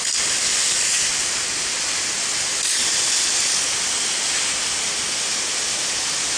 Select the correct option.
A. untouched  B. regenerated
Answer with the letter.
A